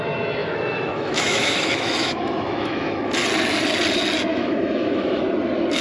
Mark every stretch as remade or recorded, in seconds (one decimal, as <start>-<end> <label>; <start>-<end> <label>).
0.0-0.4 recorded; 0.4-3.1 remade; 3.1-4.3 recorded; 4.3-5.2 remade; 5.2-5.8 recorded